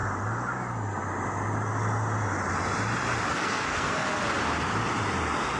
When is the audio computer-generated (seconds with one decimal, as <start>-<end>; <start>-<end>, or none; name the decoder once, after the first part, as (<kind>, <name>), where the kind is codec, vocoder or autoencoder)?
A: 3.3-4.2 (codec, SNAC)